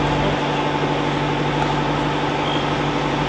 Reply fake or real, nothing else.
real